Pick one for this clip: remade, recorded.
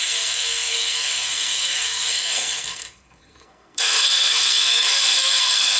remade